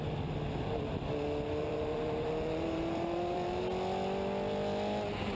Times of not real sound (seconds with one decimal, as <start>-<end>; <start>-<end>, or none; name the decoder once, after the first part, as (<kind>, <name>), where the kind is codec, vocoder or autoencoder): 1.6-3.6 (vocoder, BigVGAN v2)